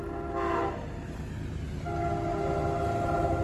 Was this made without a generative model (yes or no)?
yes